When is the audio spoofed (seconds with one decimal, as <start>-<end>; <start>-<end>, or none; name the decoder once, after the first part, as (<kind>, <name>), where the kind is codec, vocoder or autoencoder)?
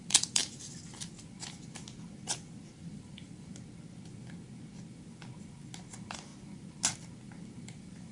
0.0-0.4 (vocoder, BigVGAN v2); 2.9-3.5; 5.8-6.3; 7.6-8.1